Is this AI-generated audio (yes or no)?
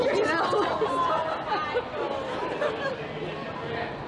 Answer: no